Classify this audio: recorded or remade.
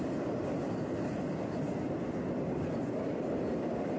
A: recorded